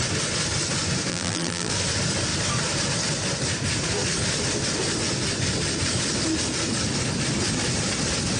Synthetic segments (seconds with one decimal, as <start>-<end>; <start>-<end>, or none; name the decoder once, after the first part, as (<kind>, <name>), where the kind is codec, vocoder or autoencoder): 1.1-1.7 (vocoder, BigVGAN v2)